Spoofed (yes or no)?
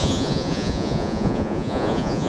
yes